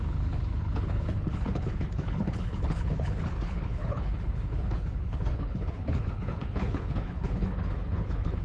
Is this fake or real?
fake